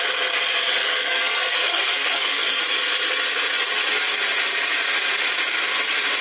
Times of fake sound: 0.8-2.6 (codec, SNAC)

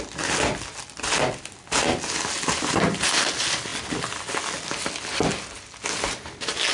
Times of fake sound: 3.7-4.4 (vocoder, BigVGAN v2)

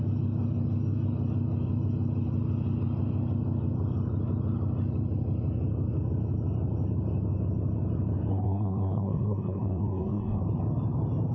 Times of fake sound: 8.3-10.4 (codec, SNAC)

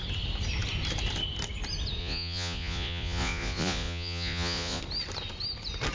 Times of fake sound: 2.0-4.8 (vocoder, Vocos)

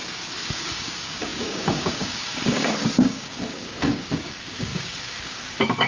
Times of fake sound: 0.5-5.9 (codec, DAC)

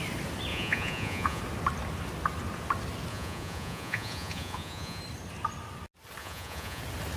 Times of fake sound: 0.5-1.4 (vocoder, Vocos); 3.1-5.0; 6.2-6.8

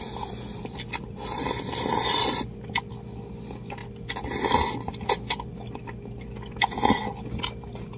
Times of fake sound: 0.0-2.9 (vocoder, BigVGAN v2)

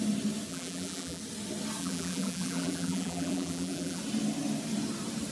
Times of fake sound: 0.5-1.2 (vocoder, BigVGAN v2); 1.8-4.0